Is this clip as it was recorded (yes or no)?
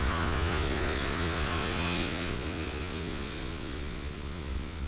no